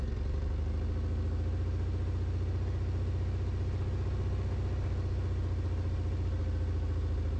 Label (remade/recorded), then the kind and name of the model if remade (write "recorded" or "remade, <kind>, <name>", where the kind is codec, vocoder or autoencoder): recorded